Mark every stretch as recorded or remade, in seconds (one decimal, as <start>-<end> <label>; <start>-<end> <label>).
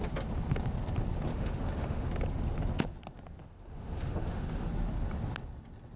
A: 0.0-1.3 recorded; 1.3-2.1 remade; 2.1-3.4 recorded; 3.4-4.7 remade; 4.7-6.0 recorded